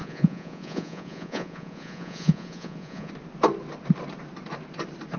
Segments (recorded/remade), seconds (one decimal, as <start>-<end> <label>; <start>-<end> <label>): 0.0-3.1 remade; 3.1-5.2 recorded

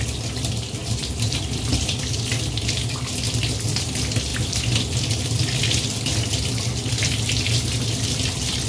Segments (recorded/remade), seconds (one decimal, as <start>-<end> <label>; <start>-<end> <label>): 0.0-0.8 recorded; 0.8-1.4 remade; 1.4-8.7 recorded

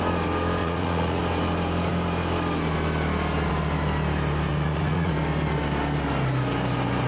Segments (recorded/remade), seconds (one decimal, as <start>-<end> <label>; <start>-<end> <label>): 0.0-0.6 recorded; 0.6-1.2 remade; 1.2-4.5 recorded; 4.5-5.1 remade; 5.1-7.1 recorded

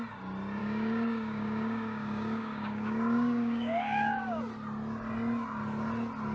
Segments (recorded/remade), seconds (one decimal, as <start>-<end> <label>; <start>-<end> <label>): 0.0-0.6 recorded; 0.6-4.4 remade; 4.4-6.3 recorded

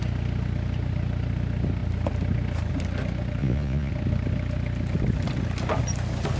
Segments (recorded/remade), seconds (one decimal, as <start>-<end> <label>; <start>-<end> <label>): 0.0-3.4 recorded; 3.4-3.9 remade; 3.9-6.4 recorded

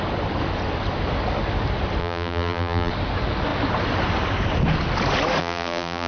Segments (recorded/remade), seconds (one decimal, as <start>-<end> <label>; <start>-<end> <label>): 0.0-2.0 recorded; 2.0-2.9 remade; 2.9-5.4 recorded; 5.4-6.1 remade

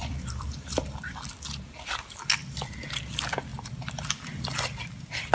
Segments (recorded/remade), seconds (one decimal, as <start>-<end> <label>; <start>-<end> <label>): 0.0-1.2 remade; 1.2-2.4 recorded; 2.4-3.0 remade; 3.0-3.5 recorded; 3.5-5.3 remade